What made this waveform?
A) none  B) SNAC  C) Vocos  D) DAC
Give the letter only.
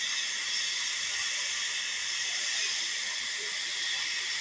A